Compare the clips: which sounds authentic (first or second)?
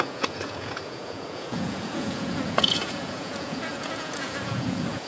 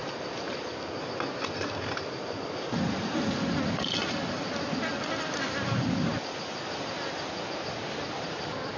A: second